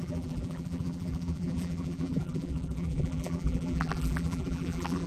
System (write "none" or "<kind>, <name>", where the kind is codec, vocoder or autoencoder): vocoder, BigVGAN v2